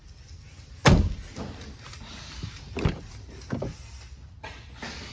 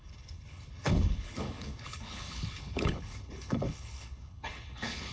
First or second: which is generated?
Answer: second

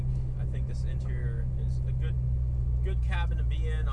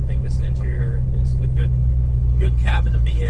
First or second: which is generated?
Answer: second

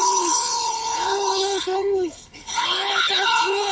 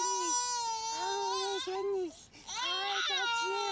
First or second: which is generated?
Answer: first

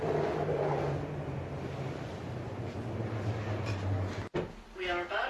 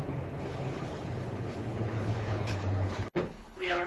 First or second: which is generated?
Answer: second